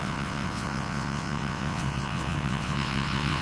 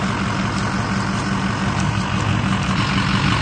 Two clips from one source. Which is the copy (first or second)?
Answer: first